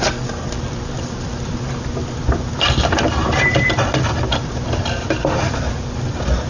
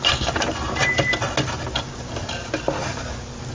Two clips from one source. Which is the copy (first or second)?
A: first